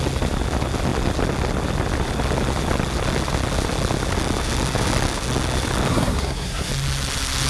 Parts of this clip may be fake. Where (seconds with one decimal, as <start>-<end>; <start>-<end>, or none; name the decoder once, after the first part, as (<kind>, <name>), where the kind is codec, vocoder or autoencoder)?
5.9-6.7 (codec, SNAC)